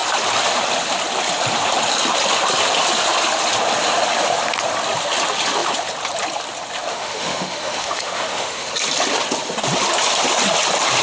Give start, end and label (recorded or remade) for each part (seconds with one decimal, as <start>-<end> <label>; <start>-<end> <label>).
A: 0.0-6.9 recorded; 6.9-8.7 remade; 8.7-11.0 recorded